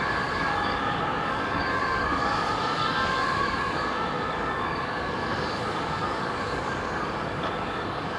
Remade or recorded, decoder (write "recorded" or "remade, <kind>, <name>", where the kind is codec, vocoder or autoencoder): remade, codec, DAC